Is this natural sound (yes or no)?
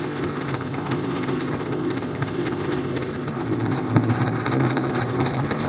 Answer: no